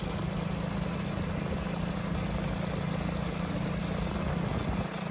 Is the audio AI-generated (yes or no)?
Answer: no